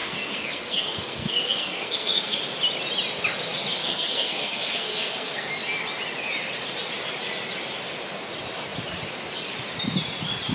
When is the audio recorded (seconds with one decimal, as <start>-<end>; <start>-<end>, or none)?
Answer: 2.4-3.8; 5.5-10.5